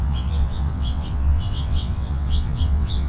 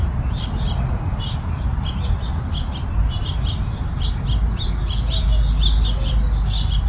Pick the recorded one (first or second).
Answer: second